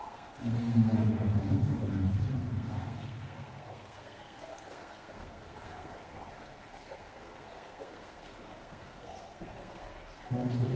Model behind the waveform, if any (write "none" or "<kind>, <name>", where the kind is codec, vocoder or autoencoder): codec, SNAC